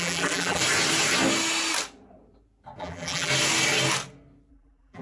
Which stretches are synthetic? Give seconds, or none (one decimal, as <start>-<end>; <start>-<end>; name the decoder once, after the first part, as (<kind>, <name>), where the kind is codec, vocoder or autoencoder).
0.0-0.6 (vocoder, BigVGAN v2); 2.8-3.3; 4.5-5.0

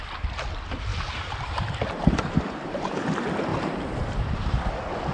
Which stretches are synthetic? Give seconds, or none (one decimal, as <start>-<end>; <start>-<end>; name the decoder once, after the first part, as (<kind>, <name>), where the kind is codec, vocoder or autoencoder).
0.9-2.4 (vocoder, BigVGAN v2); 3.5-4.6

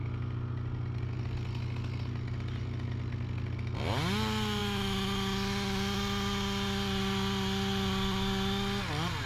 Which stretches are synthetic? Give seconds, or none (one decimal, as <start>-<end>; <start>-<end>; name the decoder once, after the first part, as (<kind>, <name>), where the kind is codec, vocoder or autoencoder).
none